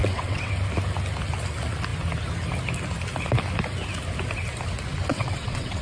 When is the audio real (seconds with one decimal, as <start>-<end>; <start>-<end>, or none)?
0.5-5.1